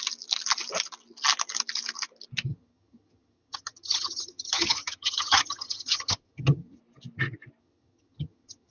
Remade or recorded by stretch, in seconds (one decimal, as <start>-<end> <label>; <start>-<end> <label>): 0.0-2.5 recorded; 2.5-6.8 remade; 6.8-7.6 recorded; 7.6-8.7 remade